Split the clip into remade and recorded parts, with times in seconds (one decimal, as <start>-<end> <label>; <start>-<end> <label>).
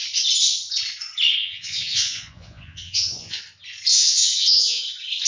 0.0-1.4 recorded; 1.4-3.4 remade; 3.4-3.9 recorded; 3.9-4.8 remade; 4.8-5.3 recorded